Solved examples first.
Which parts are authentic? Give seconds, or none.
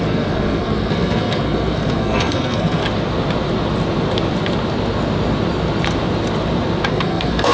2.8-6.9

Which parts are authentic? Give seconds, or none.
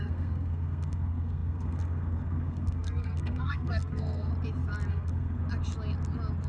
4.3-4.9; 5.4-6.5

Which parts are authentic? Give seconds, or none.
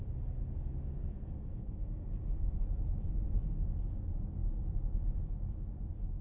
0.0-1.1; 1.9-6.2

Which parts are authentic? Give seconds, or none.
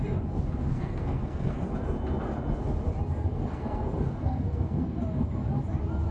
0.0-0.7; 1.7-3.2; 5.0-6.1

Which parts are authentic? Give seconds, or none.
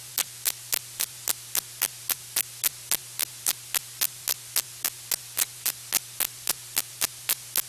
0.0-7.7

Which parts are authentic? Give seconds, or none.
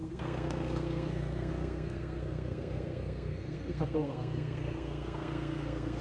none